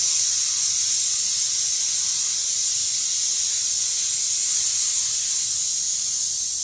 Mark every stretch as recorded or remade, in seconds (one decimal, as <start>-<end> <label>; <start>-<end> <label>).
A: 0.0-6.6 recorded